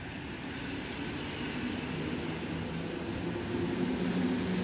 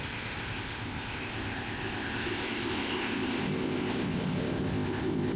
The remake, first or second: second